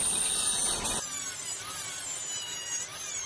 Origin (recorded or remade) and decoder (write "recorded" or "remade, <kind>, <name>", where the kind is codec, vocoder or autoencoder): recorded